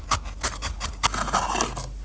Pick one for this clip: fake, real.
real